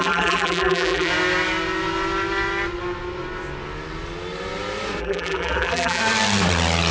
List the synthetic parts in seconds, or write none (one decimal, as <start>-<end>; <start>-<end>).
0.0-1.1; 5.0-6.0

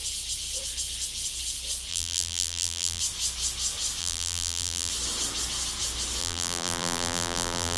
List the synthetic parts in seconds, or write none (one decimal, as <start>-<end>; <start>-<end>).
1.9-3.0; 4.0-4.9; 6.2-7.8

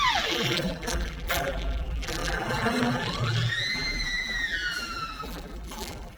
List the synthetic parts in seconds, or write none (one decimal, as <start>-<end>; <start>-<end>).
0.0-6.2

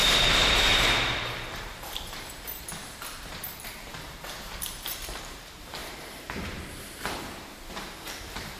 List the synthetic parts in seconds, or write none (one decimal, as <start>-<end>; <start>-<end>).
0.0-8.6

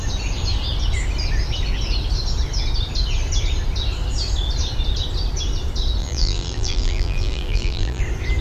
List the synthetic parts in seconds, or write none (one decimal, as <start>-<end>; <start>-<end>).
6.0-8.0

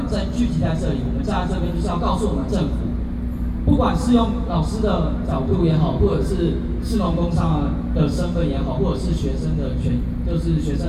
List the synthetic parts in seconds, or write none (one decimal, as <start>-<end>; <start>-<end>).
5.5-6.3

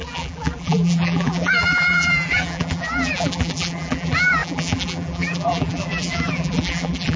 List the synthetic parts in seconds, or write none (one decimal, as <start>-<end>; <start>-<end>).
0.0-7.2